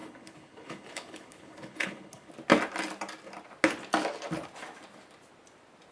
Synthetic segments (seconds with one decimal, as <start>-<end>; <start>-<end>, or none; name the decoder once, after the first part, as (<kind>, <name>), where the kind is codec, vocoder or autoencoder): 0.0-2.3 (codec, HILCodec)